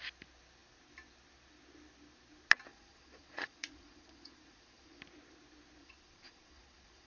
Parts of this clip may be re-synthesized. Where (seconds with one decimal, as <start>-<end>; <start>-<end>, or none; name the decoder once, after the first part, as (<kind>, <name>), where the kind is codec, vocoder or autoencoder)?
2.7-5.0 (vocoder, Vocos); 5.8-7.1